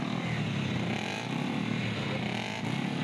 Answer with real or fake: real